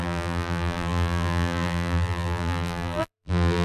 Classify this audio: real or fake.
fake